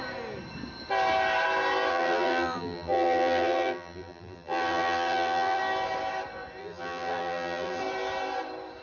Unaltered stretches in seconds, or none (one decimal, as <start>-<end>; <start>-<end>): 0.0-1.9; 5.6-6.6; 7.8-8.8